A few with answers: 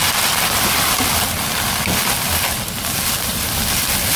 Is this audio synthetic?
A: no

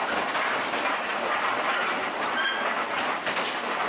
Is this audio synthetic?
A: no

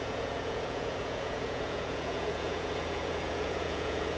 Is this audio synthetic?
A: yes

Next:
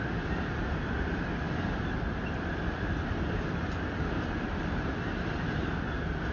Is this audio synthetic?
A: no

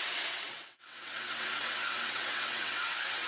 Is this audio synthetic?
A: yes